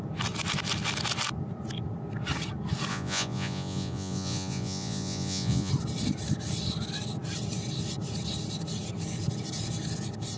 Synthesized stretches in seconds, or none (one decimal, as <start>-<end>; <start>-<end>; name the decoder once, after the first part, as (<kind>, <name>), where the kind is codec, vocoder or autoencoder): 2.9-5.7 (vocoder, Vocos)